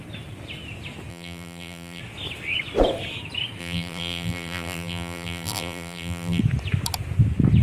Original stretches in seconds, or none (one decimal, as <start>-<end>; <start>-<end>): 0.0-1.1; 2.0-3.6; 6.4-7.6